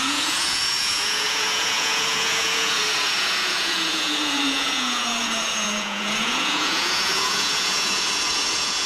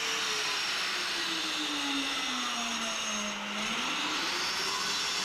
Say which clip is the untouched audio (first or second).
second